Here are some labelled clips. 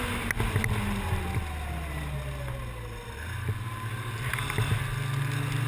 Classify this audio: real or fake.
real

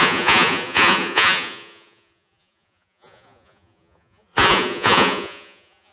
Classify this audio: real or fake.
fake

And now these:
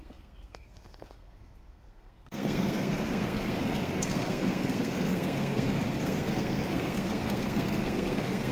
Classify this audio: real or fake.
fake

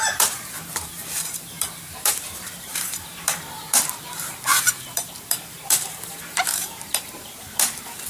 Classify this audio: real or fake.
fake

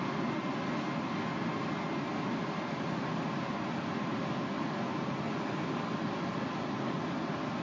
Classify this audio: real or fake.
real